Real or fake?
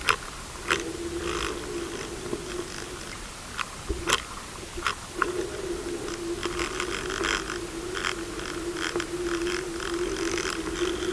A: real